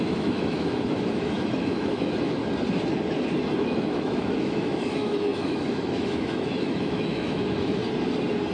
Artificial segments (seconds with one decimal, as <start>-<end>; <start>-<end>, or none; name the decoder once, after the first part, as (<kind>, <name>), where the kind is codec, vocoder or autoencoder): 0.0-2.4 (autoencoder, DAC-VAE); 3.6-7.8

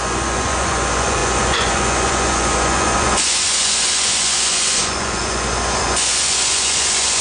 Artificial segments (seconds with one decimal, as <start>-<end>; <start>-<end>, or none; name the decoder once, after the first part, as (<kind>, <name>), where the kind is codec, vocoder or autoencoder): 0.0-7.2 (vocoder, Vocos)

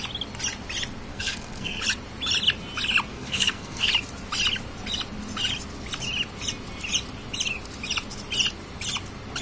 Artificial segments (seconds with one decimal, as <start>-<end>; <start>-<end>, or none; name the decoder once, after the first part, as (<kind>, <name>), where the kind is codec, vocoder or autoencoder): 1.1-1.8 (codec, SNAC); 3.1-3.9

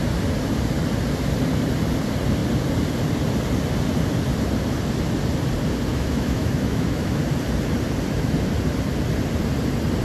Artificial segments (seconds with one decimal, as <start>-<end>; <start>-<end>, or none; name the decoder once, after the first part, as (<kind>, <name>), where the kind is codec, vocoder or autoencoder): 5.9-7.2 (autoencoder, DAC-VAE)

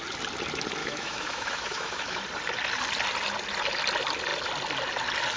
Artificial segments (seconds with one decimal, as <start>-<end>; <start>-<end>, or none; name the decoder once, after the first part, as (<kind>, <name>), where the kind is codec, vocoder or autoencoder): 0.8-2.2 (autoencoder, DAC-VAE)

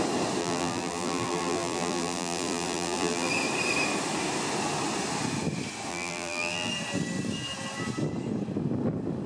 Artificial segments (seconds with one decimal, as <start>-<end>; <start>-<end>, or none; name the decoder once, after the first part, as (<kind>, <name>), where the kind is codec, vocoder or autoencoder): 0.4-3.3 (vocoder, BigVGAN v2); 5.9-6.7

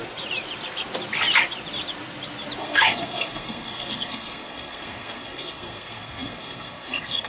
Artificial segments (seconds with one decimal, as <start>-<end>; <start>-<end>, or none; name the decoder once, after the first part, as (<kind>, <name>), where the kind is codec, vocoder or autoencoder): 2.6-7.3 (codec, SNAC)

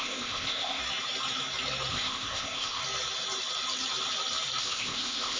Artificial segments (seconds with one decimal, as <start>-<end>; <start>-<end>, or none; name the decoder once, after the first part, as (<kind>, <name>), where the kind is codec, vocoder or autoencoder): 0.0-0.8 (codec, ZipCodec); 1.9-2.8; 4.6-5.4